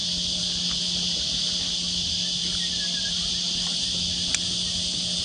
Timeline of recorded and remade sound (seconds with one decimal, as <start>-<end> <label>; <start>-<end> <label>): 0.0-5.2 recorded